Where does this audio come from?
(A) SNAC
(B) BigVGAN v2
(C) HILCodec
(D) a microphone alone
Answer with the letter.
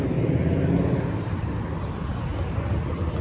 D